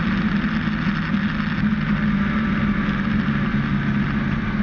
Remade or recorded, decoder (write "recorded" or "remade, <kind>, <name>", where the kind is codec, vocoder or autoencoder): recorded